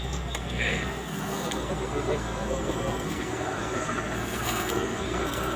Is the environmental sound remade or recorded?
remade